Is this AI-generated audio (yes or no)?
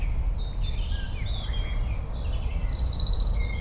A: no